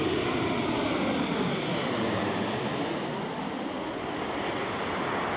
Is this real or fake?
real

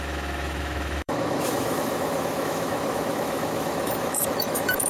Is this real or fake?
fake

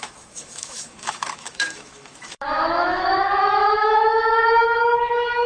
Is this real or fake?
fake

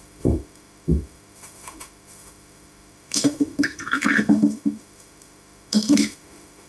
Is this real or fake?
fake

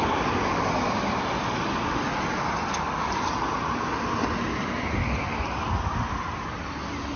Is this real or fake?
real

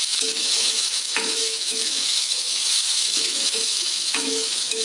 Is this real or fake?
fake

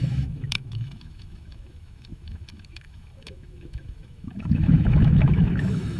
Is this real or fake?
fake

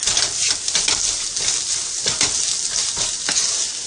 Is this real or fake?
real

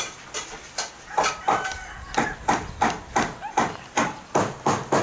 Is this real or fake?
real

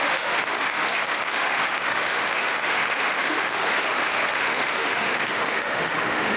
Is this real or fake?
fake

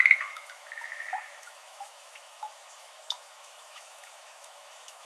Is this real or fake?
fake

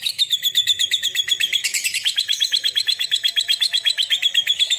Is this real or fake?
fake